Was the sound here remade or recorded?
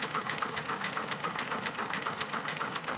remade